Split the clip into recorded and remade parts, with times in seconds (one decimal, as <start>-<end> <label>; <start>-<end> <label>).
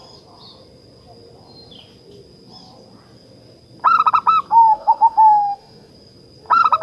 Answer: 0.0-4.7 recorded; 4.7-5.9 remade; 5.9-6.8 recorded